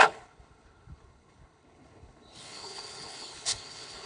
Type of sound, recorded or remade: remade